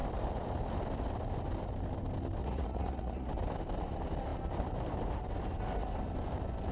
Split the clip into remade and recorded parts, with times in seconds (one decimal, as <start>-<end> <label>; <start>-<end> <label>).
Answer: 0.0-2.4 recorded; 2.4-3.3 remade; 3.3-6.7 recorded